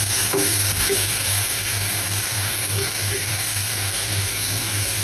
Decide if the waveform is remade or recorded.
remade